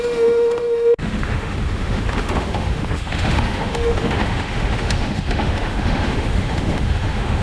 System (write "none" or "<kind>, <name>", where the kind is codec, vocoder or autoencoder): autoencoder, DAC-VAE